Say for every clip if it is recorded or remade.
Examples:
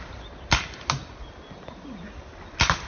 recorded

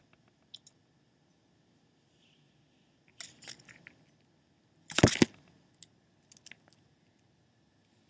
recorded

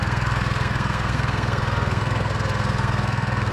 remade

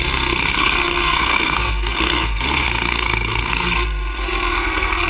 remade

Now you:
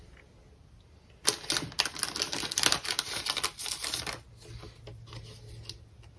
recorded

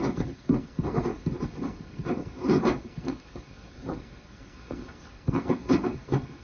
remade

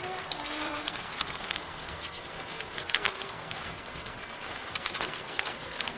remade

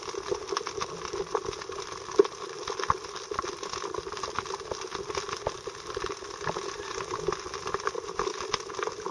recorded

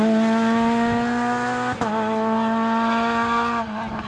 recorded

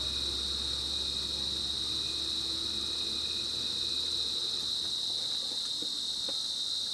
recorded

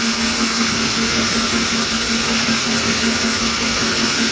remade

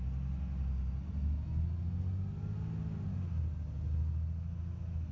recorded